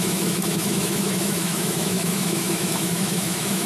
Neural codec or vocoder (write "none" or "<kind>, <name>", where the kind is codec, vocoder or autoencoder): autoencoder, DAC-VAE